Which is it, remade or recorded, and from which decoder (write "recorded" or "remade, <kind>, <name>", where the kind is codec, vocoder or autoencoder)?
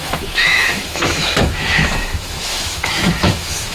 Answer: remade, autoencoder, DAC-VAE